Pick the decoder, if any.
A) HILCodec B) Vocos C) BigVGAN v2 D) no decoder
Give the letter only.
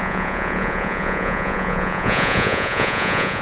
B